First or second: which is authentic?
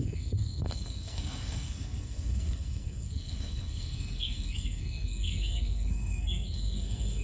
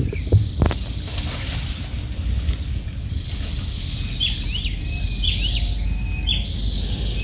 second